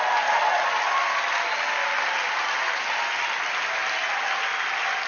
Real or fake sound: real